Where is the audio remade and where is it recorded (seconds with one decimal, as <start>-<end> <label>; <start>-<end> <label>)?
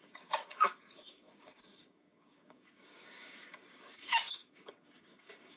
0.0-5.6 remade